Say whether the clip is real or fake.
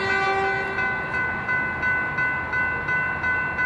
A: real